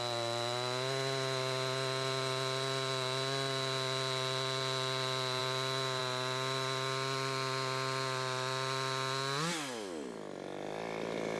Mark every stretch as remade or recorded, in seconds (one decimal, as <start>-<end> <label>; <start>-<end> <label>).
0.0-11.4 recorded